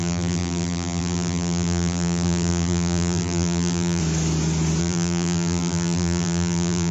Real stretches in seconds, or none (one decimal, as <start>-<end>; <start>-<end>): 4.0-4.8